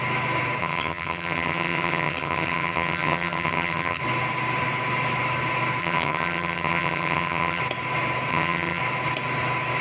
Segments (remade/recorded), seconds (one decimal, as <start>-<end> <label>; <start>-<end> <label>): 0.0-0.6 recorded; 0.6-4.0 remade; 4.0-5.8 recorded; 5.8-7.6 remade; 7.6-8.3 recorded; 8.3-8.8 remade; 8.8-9.8 recorded